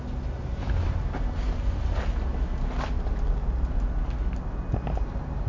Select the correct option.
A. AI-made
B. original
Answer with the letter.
B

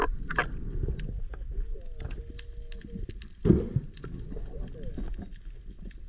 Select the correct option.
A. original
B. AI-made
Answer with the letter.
A